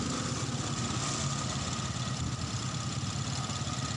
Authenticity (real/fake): real